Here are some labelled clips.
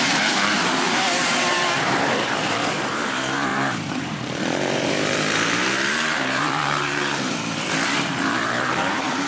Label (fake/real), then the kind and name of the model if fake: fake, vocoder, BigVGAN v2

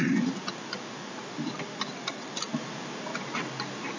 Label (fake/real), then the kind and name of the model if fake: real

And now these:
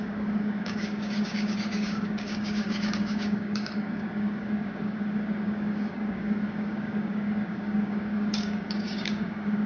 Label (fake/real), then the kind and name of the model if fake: fake, codec, DAC